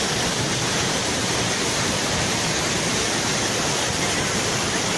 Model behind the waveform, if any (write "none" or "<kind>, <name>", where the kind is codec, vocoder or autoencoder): vocoder, BigVGAN v2